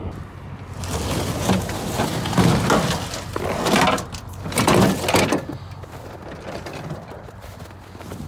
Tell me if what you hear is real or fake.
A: real